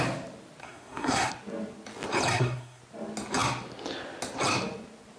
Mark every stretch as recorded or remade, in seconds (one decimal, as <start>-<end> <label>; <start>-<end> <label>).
0.0-0.6 recorded; 0.6-1.3 remade; 1.3-2.3 recorded; 2.3-2.8 remade; 2.8-5.2 recorded